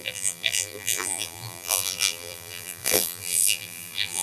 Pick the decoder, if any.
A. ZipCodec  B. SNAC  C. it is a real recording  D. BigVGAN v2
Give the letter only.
D